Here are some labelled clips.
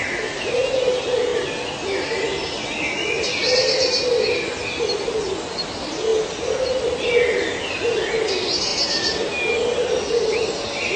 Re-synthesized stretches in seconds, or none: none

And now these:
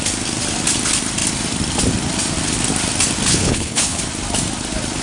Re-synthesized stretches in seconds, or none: 3.3-4.0 (codec, HILCodec)

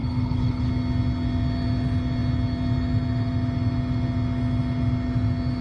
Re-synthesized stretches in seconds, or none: 0.0-0.7 (codec, HILCodec)

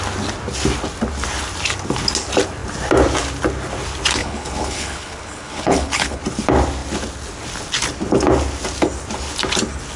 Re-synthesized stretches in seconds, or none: 4.2-6.2 (codec, HILCodec)

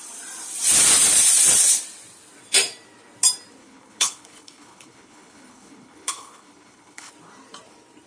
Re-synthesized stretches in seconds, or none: 3.6-7.1 (codec, HILCodec)

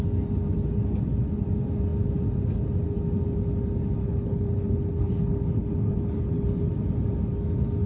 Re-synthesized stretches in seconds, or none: 4.0-6.7 (codec, HILCodec)

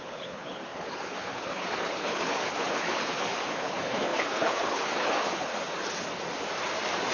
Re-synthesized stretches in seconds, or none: 0.0-5.5 (codec, HILCodec)

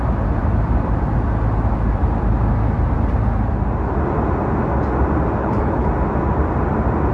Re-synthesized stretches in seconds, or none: 5.4-5.9 (codec, HILCodec)